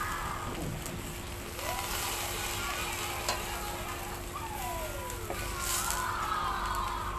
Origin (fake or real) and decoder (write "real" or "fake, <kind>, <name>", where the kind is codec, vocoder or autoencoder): real